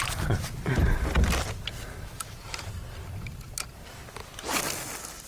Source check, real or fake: real